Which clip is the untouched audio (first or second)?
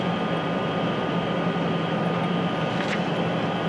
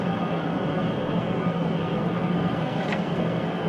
first